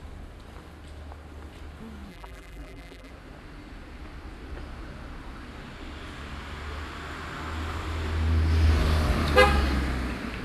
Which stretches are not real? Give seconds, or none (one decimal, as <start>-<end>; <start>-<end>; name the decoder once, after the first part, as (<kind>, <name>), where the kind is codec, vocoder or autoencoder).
2.1-3.1 (vocoder, BigVGAN v2)